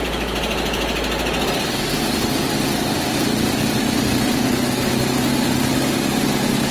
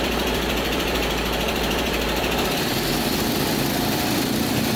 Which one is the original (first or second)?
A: first